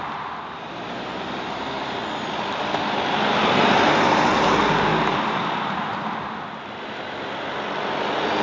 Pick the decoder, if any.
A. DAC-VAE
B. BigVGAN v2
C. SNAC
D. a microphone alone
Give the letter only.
D